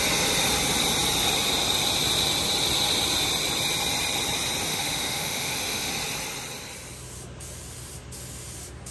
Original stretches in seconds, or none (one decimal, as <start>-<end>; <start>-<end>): 0.0-4.7; 5.9-8.9